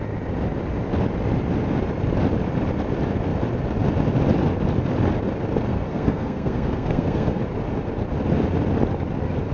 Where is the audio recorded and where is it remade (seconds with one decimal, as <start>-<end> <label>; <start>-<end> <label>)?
0.0-5.7 recorded; 5.7-7.4 remade; 7.4-9.5 recorded